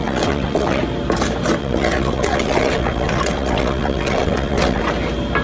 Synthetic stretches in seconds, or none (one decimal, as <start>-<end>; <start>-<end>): 0.0-0.8; 1.6-4.8